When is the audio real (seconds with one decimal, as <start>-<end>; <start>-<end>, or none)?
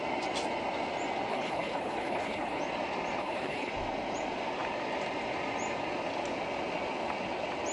0.0-1.3; 2.6-3.2; 3.7-7.7